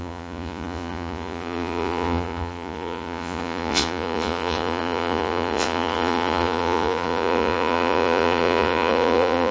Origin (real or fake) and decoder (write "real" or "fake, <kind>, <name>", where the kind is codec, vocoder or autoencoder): fake, vocoder, Vocos